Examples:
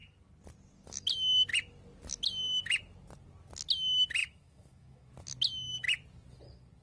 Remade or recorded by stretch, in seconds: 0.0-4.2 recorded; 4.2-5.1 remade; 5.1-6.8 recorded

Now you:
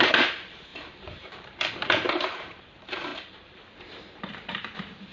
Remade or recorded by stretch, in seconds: 0.0-5.1 remade

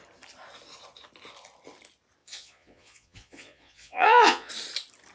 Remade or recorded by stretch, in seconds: 0.0-2.2 recorded; 2.2-4.5 remade; 4.5-5.1 recorded

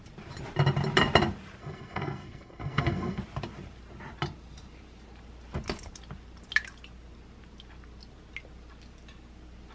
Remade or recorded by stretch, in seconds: 0.0-1.6 recorded; 1.6-3.2 remade; 3.2-9.7 recorded

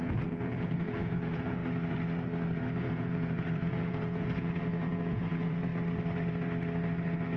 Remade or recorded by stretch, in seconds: 0.0-1.6 remade; 1.6-2.8 recorded; 2.8-5.7 remade; 5.7-7.4 recorded